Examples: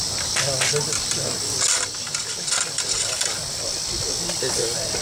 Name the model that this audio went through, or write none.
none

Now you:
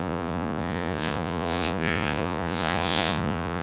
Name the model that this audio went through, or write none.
vocoder, Vocos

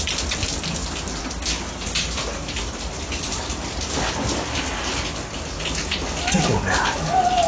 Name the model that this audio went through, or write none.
none